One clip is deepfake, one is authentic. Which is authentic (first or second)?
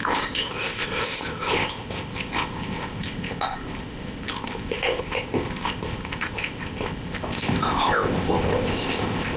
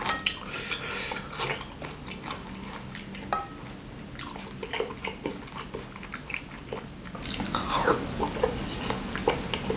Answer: second